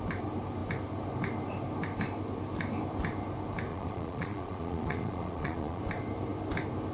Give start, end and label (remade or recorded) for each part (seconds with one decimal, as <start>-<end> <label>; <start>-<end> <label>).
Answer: 0.0-3.7 recorded; 3.7-5.8 remade; 5.8-6.9 recorded